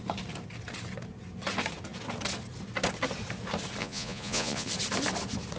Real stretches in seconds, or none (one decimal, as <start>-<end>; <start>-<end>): 0.0-3.8; 4.7-5.6